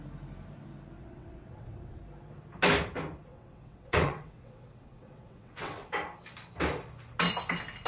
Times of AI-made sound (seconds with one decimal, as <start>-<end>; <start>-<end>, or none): 1.0-2.0; 3.3-5.9

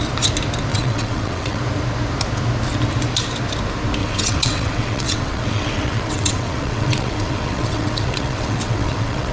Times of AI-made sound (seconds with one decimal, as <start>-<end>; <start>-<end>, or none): 0.7-1.6; 4.0-9.3

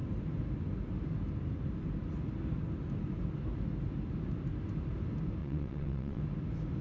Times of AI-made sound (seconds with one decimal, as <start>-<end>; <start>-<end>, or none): 5.4-6.2

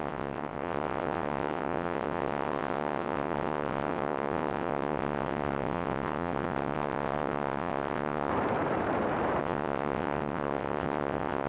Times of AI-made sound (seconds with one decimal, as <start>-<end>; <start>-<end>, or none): 0.0-8.3; 9.4-11.5

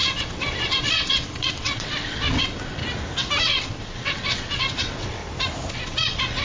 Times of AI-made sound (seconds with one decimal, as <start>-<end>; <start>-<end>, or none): 0.0-2.8; 3.4-5.2; 5.7-6.4

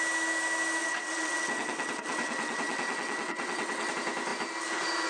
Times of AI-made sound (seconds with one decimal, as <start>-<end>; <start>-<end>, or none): 0.8-3.9